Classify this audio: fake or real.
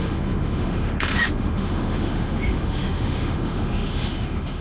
fake